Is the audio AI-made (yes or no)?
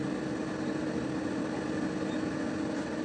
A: no